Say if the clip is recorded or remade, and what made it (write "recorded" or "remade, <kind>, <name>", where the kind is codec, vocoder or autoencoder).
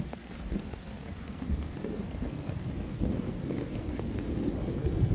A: remade, codec, SNAC